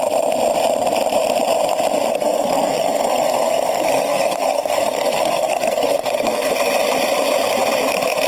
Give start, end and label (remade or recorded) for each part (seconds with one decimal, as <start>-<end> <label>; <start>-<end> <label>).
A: 0.0-2.1 recorded; 2.1-6.5 remade; 6.5-8.3 recorded